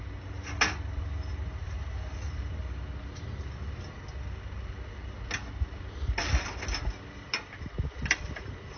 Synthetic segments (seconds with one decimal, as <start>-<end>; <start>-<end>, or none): 1.6-2.6